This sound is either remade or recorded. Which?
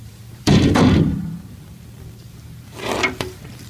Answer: remade